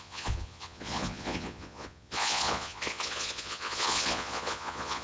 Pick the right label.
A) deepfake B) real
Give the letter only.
A